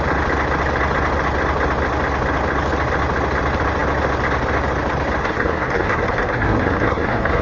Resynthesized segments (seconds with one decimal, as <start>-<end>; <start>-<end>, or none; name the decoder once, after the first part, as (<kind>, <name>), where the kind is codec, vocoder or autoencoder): 5.2-7.4 (codec, SNAC)